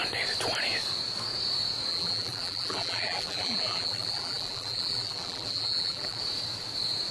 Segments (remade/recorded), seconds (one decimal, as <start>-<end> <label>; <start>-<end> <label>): 0.0-1.9 recorded; 1.9-6.2 remade; 6.2-7.1 recorded